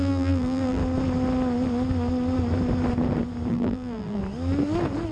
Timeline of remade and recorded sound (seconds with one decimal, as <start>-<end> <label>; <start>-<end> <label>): 0.0-0.8 remade; 0.8-3.5 recorded; 3.5-4.2 remade; 4.2-5.1 recorded